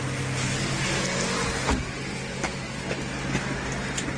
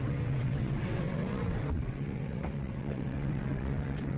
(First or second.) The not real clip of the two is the second